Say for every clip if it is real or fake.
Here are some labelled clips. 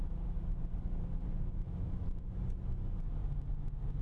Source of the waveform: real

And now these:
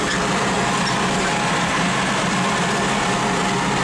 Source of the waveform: real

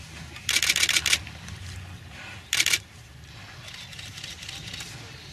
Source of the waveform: real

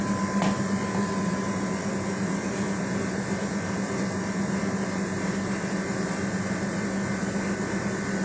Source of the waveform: real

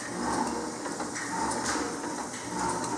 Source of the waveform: real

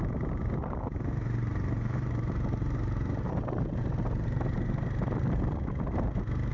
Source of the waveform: fake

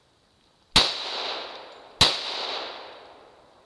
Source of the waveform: real